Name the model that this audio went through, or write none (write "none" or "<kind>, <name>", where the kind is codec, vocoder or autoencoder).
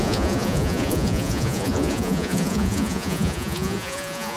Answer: vocoder, Vocos